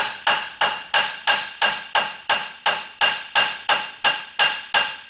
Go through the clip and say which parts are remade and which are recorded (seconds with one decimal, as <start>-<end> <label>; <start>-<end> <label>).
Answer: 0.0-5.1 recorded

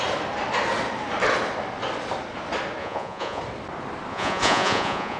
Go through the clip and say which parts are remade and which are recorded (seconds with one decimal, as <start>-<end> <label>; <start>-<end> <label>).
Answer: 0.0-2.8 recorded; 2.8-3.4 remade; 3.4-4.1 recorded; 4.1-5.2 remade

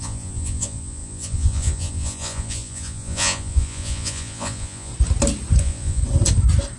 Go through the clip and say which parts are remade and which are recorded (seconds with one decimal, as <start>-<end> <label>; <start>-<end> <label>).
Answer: 0.0-4.9 remade; 4.9-5.6 recorded; 5.6-6.0 remade; 6.0-6.8 recorded